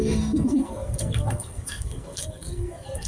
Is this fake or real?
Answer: fake